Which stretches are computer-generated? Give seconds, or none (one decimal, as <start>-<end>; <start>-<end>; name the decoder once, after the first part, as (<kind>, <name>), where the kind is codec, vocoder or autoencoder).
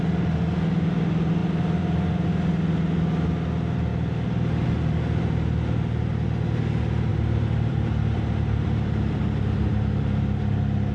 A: 1.4-2.1 (vocoder, BigVGAN v2); 7.1-9.2